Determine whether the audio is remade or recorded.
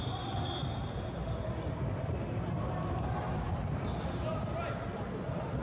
recorded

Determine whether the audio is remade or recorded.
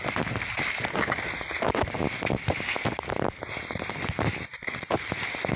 recorded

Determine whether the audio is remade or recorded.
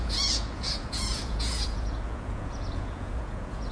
remade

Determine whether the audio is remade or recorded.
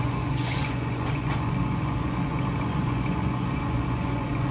remade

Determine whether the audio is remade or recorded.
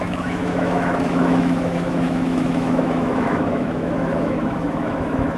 remade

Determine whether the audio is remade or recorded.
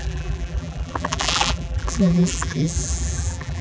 remade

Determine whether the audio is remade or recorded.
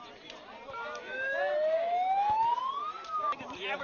recorded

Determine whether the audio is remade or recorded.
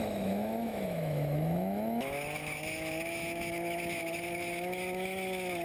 remade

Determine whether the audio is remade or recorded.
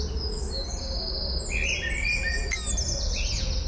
recorded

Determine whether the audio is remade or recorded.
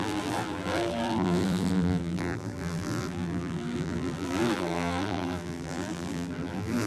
remade